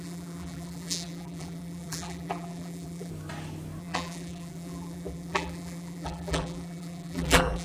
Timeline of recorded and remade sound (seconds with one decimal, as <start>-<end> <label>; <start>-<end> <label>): 0.0-3.1 remade; 3.1-3.8 recorded; 3.8-7.6 remade